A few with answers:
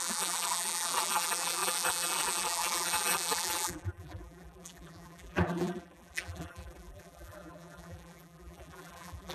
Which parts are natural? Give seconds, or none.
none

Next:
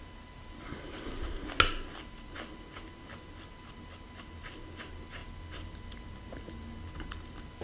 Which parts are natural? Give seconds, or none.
0.0-7.6

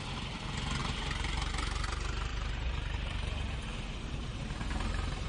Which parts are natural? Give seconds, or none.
0.0-0.8; 1.5-2.3; 3.3-3.7

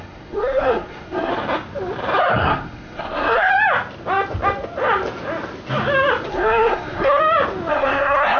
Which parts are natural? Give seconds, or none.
1.3-2.3; 3.5-6.3; 7.2-7.7

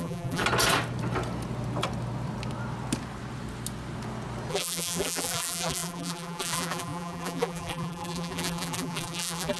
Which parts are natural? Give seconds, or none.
0.4-4.5

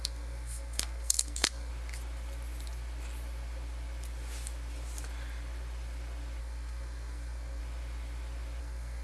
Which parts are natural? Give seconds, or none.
1.7-6.4; 7.6-8.6

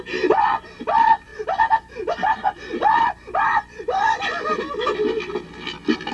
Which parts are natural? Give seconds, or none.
0.0-1.3; 4.2-6.1